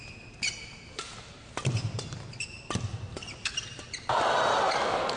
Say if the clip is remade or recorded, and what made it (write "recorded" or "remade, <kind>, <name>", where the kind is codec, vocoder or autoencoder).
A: recorded